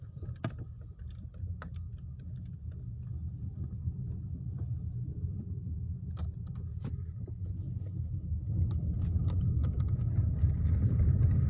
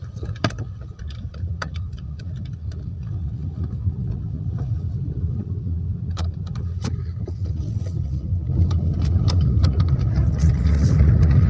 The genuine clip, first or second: first